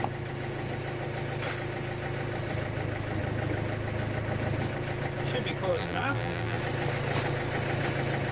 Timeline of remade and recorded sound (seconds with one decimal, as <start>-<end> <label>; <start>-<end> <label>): 0.0-5.7 recorded; 5.7-6.6 remade; 6.6-8.3 recorded